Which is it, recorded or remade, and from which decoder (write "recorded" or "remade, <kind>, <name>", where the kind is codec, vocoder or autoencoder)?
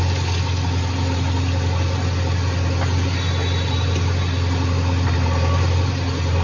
recorded